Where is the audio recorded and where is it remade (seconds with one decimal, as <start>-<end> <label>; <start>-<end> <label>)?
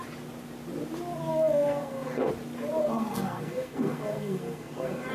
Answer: 0.0-1.3 recorded; 1.3-2.3 remade; 2.3-2.8 recorded; 2.8-5.1 remade